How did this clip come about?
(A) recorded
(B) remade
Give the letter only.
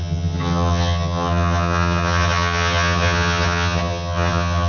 B